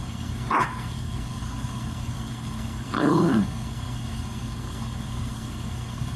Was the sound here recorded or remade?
remade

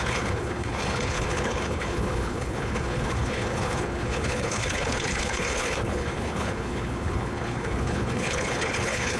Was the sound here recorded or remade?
remade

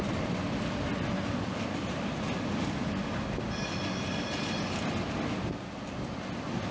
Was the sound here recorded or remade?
recorded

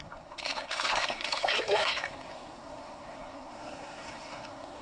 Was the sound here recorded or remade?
remade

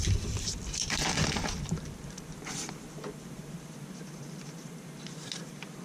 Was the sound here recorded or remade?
remade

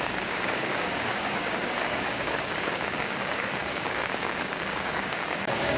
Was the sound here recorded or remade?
remade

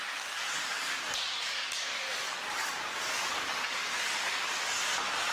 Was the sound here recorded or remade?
remade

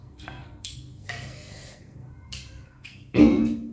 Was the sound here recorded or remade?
remade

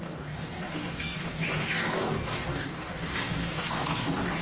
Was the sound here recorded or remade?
remade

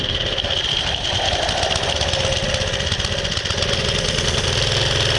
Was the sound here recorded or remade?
recorded